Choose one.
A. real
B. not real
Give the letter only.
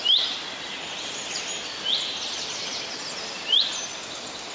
A